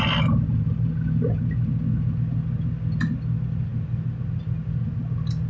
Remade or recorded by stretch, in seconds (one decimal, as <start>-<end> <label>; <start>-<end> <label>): 0.0-5.5 recorded